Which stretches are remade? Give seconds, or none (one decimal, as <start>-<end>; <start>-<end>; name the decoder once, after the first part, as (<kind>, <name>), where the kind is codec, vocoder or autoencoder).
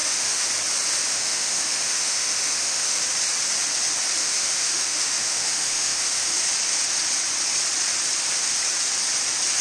0.0-0.5 (autoencoder, DAC-VAE); 1.1-3.0; 4.2-6.4